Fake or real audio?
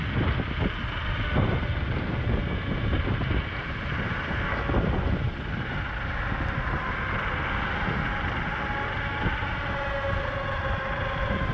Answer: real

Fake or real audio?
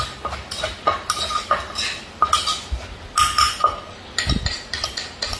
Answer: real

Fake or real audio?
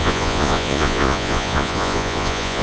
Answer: fake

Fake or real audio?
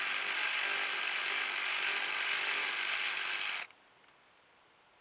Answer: real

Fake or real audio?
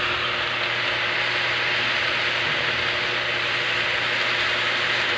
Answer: real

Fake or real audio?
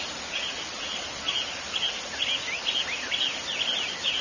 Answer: real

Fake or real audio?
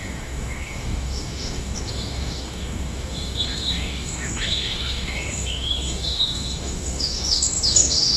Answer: fake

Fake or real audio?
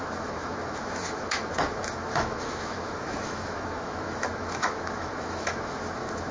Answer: fake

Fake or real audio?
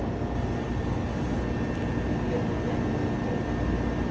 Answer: real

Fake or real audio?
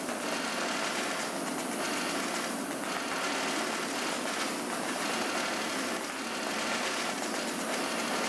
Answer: real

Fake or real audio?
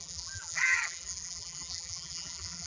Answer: fake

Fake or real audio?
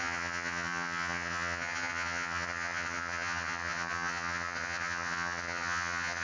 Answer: fake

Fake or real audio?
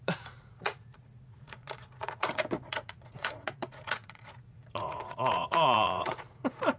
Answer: fake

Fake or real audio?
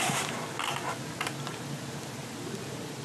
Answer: real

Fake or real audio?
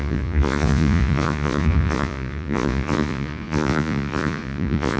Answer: fake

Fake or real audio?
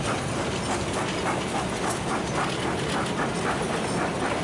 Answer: real